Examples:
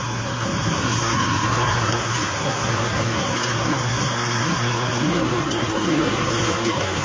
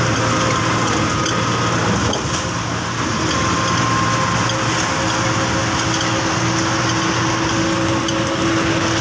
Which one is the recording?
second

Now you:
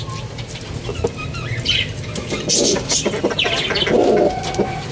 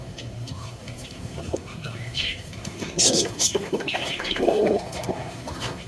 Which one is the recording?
first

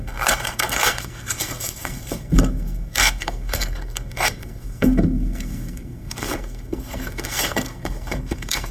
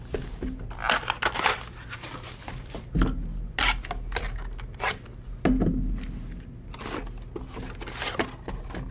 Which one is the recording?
second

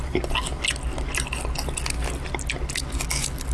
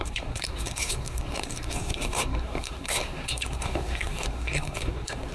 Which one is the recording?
first